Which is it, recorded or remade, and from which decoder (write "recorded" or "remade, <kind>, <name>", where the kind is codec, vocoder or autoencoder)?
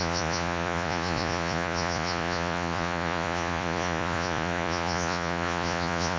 remade, vocoder, Vocos